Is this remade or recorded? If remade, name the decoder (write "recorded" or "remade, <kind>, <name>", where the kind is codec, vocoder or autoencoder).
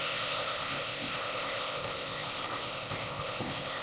remade, codec, ZipCodec